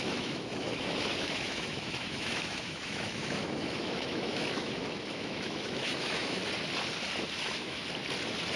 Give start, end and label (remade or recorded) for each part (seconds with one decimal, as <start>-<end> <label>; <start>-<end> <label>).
0.0-6.4 remade; 6.4-7.3 recorded; 7.3-7.8 remade; 7.8-8.6 recorded

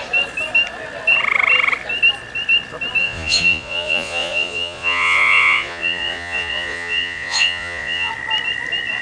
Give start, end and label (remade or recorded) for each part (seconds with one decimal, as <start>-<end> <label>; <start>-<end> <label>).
0.0-3.0 recorded; 3.0-8.1 remade; 8.1-9.0 recorded

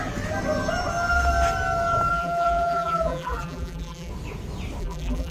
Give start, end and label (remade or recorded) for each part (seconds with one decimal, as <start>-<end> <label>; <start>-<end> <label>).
0.0-2.1 recorded; 2.1-4.1 remade; 4.1-4.8 recorded; 4.8-5.3 remade

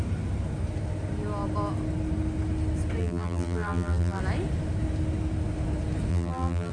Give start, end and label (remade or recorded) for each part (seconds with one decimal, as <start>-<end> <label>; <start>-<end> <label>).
0.0-3.0 recorded; 3.0-4.2 remade; 4.2-6.1 recorded; 6.1-6.7 remade

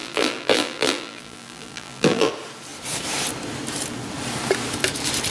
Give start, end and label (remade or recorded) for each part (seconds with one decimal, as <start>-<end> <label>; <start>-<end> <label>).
0.0-2.3 remade; 2.3-5.3 recorded